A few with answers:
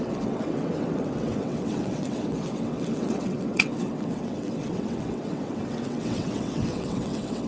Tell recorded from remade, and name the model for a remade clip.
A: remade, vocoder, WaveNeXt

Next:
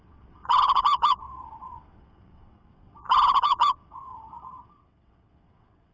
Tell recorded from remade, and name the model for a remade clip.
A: remade, vocoder, WaveNeXt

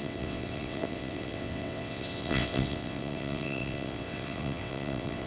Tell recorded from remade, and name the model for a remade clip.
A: remade, vocoder, WaveNeXt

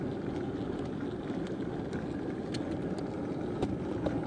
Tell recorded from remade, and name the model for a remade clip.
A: recorded